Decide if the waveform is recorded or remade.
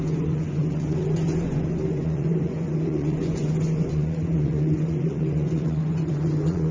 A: remade